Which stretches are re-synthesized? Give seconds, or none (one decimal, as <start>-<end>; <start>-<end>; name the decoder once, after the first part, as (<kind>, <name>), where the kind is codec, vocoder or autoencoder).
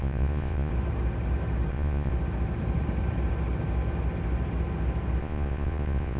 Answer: 0.0-0.7 (vocoder, Vocos); 1.7-2.1; 5.2-6.2